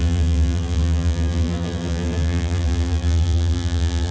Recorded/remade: remade